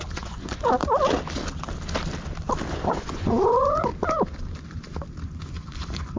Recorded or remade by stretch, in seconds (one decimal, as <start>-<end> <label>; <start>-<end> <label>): 0.0-0.8 remade; 0.8-2.7 recorded; 2.7-3.9 remade; 3.9-5.4 recorded; 5.4-6.2 remade

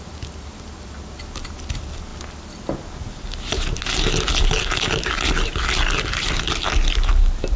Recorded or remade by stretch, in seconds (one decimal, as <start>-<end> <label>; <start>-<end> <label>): 0.0-7.6 recorded

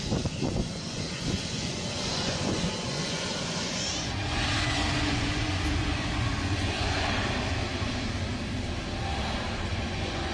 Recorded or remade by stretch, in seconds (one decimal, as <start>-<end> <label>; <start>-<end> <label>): 0.0-7.2 remade; 7.2-9.7 recorded; 9.7-10.3 remade

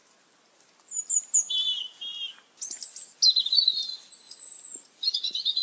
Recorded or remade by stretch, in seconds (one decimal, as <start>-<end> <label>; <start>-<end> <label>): 0.0-3.4 recorded; 3.4-5.6 remade

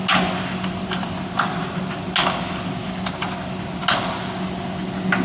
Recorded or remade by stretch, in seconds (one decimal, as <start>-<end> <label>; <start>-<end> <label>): 0.0-5.2 recorded

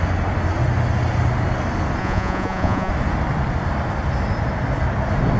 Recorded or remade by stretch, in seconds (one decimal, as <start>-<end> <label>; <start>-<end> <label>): 0.0-2.0 recorded; 2.0-2.9 remade; 2.9-5.4 recorded

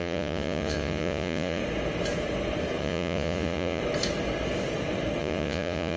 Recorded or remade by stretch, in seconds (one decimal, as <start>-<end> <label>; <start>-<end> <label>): 0.0-1.6 remade; 1.6-2.8 recorded; 2.8-3.8 remade; 3.8-5.2 recorded; 5.2-6.0 remade

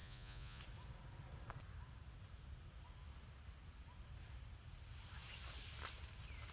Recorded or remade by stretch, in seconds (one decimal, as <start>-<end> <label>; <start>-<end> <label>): 0.0-0.6 remade; 0.6-6.5 recorded